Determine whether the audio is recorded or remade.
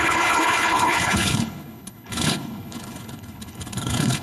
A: remade